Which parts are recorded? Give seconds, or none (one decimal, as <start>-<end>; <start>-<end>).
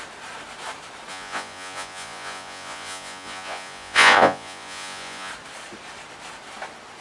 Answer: 0.0-1.1; 5.3-7.0